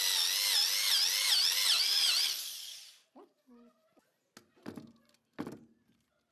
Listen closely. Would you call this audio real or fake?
real